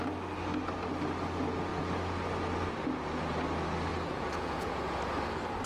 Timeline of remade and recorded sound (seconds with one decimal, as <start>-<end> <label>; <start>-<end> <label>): 0.0-3.9 recorded; 3.9-5.1 remade; 5.1-5.7 recorded